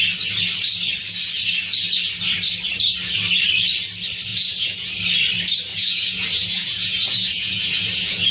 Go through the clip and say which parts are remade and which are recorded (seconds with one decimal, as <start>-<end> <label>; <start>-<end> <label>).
0.0-4.3 recorded; 4.3-4.9 remade; 4.9-5.7 recorded; 5.7-8.3 remade